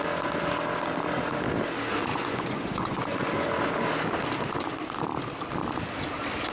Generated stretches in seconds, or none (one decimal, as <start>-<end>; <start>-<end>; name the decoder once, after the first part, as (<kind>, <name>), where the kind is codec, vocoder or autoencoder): 2.1-3.3 (vocoder, Vocos)